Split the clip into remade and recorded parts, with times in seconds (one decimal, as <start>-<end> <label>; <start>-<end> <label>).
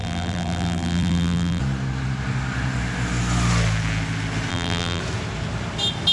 0.0-1.6 remade; 1.6-4.5 recorded; 4.5-5.0 remade; 5.0-6.1 recorded